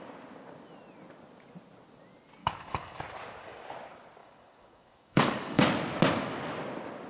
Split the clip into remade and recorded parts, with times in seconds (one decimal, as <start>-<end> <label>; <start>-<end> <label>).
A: 0.0-2.4 recorded; 2.4-3.0 remade; 3.0-4.2 recorded; 4.2-5.6 remade; 5.6-7.1 recorded